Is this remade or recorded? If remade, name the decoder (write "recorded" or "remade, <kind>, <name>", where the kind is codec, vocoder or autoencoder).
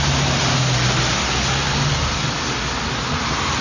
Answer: recorded